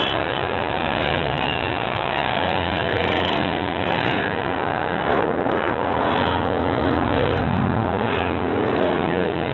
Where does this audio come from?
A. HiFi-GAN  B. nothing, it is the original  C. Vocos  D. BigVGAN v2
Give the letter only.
C